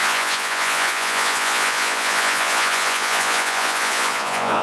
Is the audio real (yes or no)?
no